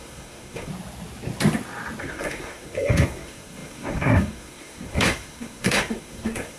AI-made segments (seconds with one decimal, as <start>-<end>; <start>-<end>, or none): 0.0-0.7; 2.0-6.6